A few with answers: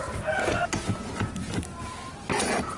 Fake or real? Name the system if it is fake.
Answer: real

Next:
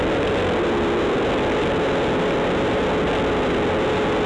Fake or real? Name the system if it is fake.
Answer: real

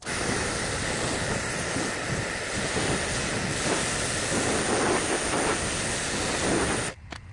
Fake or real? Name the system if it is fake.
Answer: real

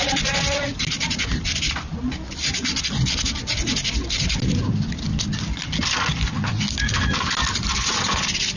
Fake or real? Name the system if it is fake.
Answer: real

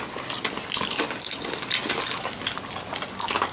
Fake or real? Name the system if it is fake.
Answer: real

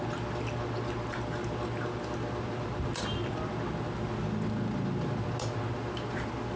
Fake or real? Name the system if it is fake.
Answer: real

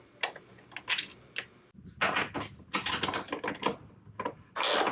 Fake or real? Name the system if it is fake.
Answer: real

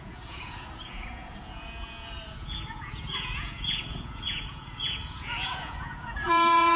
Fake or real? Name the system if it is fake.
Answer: fake, vocoder, Vocos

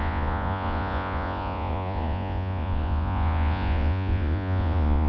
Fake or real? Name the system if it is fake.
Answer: fake, vocoder, Vocos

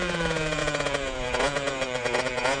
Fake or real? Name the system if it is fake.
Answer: fake, vocoder, Vocos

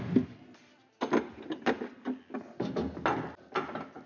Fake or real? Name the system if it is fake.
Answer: real